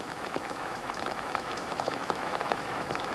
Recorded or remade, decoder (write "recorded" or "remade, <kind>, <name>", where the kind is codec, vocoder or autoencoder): remade, autoencoder, DAC-VAE